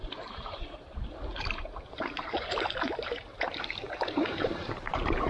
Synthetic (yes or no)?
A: yes